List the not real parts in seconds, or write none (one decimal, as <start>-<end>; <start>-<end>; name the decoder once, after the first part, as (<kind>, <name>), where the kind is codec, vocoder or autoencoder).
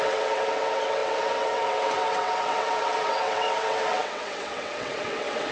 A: 0.0-5.5 (vocoder, WaveNeXt)